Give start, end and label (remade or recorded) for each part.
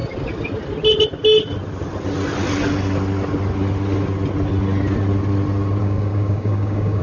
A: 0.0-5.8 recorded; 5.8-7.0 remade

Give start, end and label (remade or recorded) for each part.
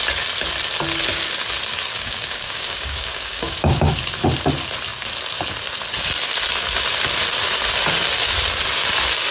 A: 0.0-1.9 recorded; 1.9-3.9 remade; 3.9-9.3 recorded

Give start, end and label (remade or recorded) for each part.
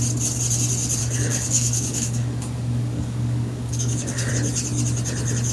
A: 0.0-1.0 recorded; 1.0-4.3 remade; 4.3-5.5 recorded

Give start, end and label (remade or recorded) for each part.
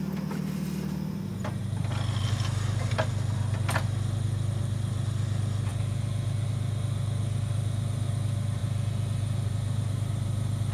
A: 0.0-10.7 recorded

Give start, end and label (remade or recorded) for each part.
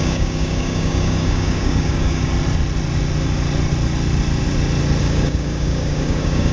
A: 0.0-2.3 remade; 2.3-5.0 recorded; 5.0-6.5 remade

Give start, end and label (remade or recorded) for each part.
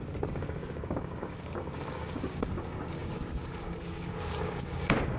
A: 0.0-5.2 remade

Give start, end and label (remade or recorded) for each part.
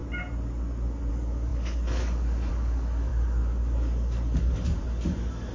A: 0.0-1.1 recorded; 1.1-5.5 remade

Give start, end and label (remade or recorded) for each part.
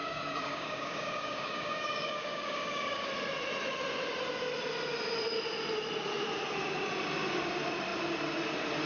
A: 0.0-3.1 remade; 3.1-8.9 recorded